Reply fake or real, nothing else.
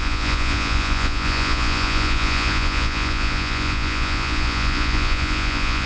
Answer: fake